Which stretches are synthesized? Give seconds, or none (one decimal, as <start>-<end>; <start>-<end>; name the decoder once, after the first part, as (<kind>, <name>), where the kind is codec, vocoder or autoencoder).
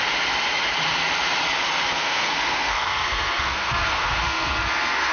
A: 1.9-5.1 (codec, SNAC)